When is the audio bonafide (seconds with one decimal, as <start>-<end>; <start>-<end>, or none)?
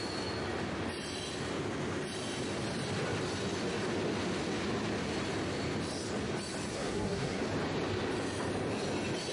0.0-6.7; 7.4-9.3